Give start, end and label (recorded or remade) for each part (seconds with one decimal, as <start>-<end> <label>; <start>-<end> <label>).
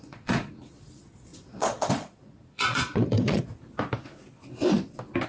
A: 0.0-3.5 remade; 3.5-5.3 recorded